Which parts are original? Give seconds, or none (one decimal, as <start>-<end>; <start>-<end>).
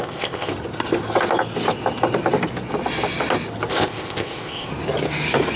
0.5-3.7; 4.7-5.6